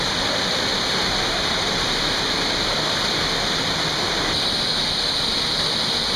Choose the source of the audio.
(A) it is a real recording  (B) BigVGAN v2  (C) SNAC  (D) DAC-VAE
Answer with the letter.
B